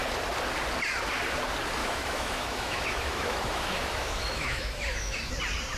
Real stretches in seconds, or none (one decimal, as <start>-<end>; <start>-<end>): 0.0-1.8; 5.3-5.8